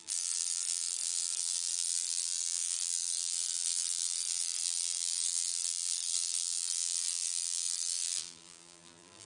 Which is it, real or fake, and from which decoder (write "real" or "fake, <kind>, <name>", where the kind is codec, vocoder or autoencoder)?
fake, vocoder, BigVGAN v2